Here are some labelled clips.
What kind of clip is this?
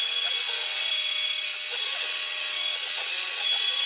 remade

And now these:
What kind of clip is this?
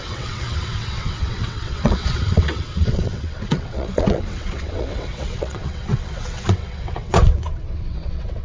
remade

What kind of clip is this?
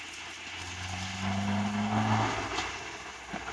recorded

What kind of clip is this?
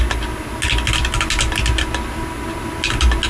recorded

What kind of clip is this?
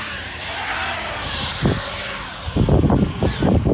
recorded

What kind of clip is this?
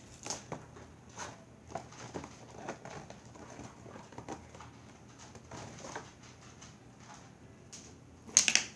recorded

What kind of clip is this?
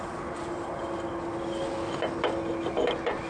recorded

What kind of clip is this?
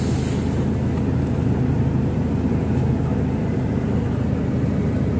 recorded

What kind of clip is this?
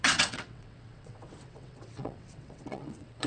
remade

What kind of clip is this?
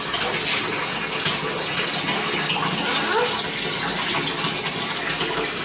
recorded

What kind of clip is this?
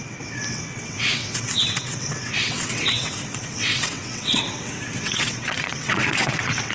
remade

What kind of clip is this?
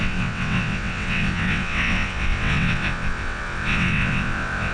remade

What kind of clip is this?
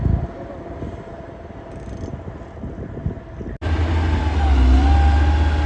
recorded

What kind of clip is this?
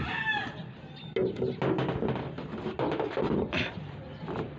recorded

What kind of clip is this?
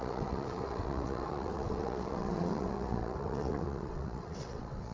remade